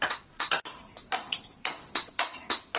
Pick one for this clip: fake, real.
fake